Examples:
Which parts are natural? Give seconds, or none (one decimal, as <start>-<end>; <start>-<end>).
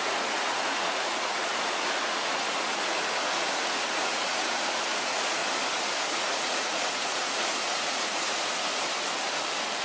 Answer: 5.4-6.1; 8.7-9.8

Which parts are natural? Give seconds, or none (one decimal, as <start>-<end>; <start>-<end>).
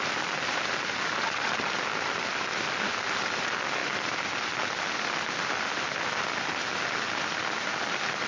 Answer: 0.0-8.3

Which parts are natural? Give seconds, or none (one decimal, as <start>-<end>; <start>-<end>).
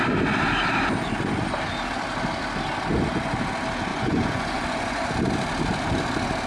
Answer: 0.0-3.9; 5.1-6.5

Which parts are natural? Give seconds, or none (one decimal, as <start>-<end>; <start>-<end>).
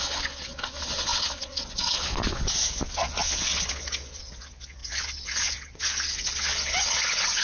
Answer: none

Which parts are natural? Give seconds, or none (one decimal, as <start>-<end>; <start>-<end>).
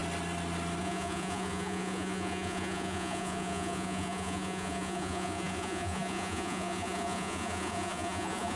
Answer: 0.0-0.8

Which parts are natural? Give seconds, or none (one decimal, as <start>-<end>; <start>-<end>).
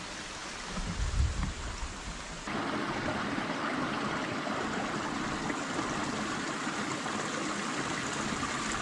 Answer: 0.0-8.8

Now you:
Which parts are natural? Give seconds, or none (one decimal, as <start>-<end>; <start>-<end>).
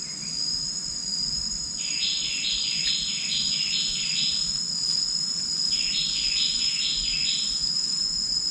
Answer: 3.0-5.7